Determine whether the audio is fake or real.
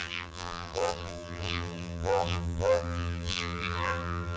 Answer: fake